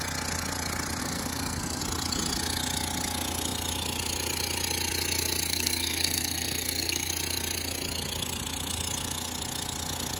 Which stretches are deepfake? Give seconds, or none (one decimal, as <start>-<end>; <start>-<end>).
1.0-1.8; 5.5-7.1